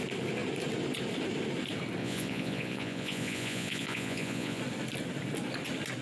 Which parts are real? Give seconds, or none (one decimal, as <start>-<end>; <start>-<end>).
0.0-2.0; 4.6-6.0